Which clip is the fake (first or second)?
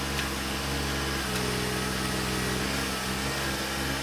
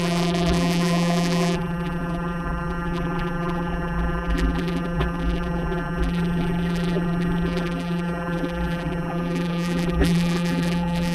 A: second